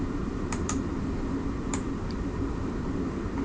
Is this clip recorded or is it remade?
remade